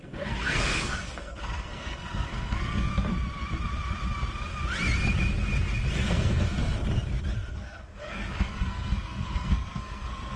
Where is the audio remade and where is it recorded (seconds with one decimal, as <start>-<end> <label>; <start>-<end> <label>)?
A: 0.0-2.9 remade; 2.9-6.1 recorded; 6.1-6.6 remade; 6.6-7.5 recorded; 7.5-10.4 remade